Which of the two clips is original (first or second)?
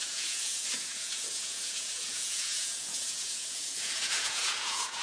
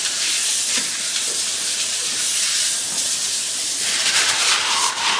second